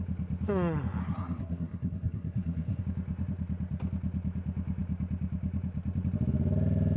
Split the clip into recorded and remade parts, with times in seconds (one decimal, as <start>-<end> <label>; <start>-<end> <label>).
0.0-1.0 recorded; 1.0-2.8 remade; 2.8-7.0 recorded